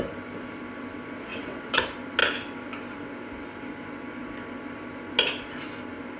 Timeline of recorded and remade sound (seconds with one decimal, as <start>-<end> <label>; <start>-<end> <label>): 0.0-1.3 recorded; 1.3-1.8 remade; 1.8-6.2 recorded